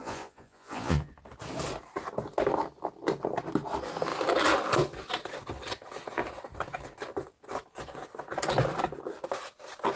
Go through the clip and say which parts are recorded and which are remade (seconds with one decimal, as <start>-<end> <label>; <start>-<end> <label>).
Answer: 0.0-1.1 remade; 1.1-10.0 recorded